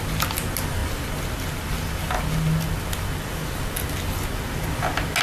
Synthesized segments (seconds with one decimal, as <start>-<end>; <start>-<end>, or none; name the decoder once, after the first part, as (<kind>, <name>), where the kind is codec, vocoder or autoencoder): none